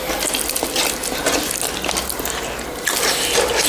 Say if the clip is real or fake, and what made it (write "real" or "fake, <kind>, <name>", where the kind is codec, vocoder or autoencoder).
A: real